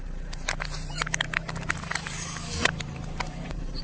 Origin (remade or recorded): remade